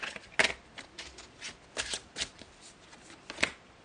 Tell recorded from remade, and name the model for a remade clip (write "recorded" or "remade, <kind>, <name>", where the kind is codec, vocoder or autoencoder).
recorded